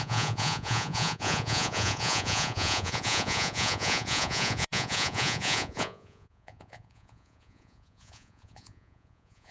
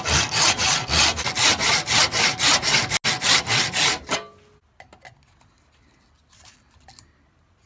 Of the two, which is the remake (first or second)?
first